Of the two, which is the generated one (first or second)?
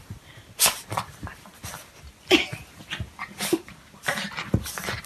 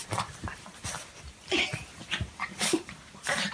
second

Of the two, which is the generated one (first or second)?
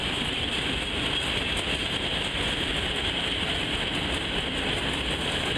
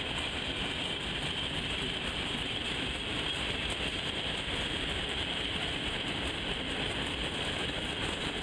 second